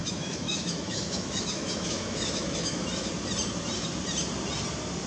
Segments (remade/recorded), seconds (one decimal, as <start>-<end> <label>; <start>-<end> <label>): 0.0-3.1 remade; 3.1-5.1 recorded

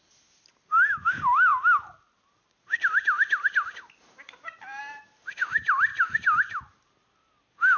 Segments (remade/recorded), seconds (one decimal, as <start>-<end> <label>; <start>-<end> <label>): 0.0-7.8 recorded